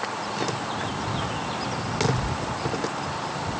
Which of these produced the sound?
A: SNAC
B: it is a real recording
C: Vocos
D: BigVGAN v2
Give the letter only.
B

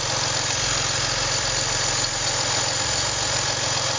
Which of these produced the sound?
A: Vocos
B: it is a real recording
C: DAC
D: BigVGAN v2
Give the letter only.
B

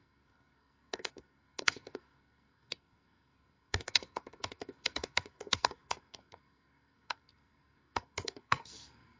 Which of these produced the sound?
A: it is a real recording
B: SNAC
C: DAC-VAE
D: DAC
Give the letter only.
B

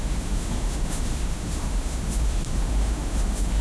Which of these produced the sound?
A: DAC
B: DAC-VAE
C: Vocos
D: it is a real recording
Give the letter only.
B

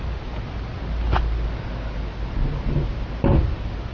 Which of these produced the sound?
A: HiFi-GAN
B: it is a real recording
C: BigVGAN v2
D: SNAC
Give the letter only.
B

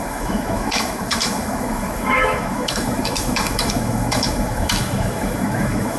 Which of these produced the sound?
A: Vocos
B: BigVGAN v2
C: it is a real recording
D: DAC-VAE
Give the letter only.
D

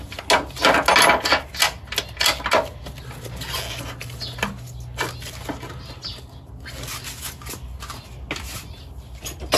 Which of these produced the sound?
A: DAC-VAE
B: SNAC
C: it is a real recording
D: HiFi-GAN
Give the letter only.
C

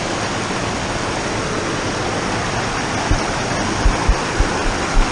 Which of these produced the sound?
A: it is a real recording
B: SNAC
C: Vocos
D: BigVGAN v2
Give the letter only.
A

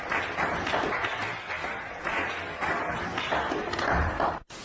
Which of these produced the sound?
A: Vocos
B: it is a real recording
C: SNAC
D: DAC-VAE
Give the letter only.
B